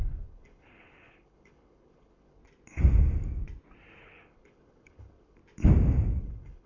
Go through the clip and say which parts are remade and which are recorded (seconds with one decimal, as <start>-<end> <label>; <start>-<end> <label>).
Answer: 0.0-2.4 remade; 2.4-4.0 recorded; 4.0-5.4 remade; 5.4-6.2 recorded; 6.2-6.7 remade

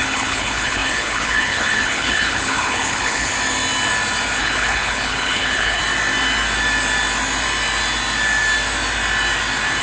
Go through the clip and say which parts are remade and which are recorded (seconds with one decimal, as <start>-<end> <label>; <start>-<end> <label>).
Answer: 0.0-3.3 remade; 3.3-4.4 recorded; 4.4-5.8 remade; 5.8-9.8 recorded

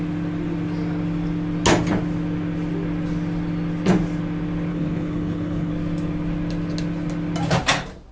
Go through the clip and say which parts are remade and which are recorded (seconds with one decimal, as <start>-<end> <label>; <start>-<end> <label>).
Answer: 0.0-4.7 recorded; 4.7-5.7 remade; 5.7-8.1 recorded

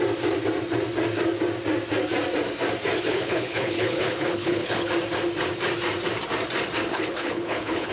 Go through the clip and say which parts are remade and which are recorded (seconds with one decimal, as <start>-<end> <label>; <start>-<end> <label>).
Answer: 0.0-3.1 recorded; 3.1-4.9 remade; 4.9-6.9 recorded; 6.9-7.9 remade

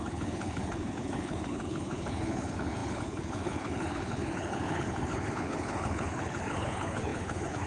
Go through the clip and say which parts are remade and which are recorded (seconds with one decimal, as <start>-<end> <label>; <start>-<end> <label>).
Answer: 0.0-7.7 remade

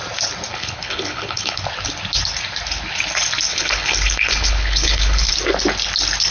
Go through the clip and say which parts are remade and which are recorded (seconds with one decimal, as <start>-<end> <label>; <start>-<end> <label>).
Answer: 0.0-0.5 recorded; 0.5-1.6 remade; 1.6-3.5 recorded; 3.5-5.3 remade; 5.3-6.3 recorded

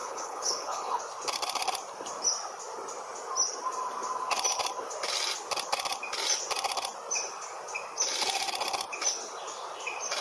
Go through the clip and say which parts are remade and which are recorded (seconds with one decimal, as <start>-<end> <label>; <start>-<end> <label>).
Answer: 0.0-1.0 remade; 1.0-10.2 recorded

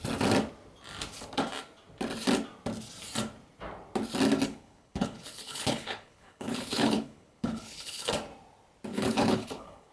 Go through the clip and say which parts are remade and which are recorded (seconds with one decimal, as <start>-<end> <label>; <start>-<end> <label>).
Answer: 0.0-4.5 recorded; 4.5-8.1 remade; 8.1-8.9 recorded; 8.9-9.9 remade